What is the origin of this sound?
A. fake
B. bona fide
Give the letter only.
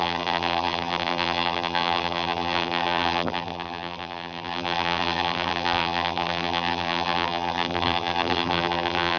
A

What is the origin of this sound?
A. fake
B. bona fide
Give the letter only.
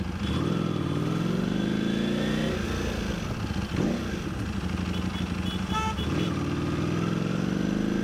B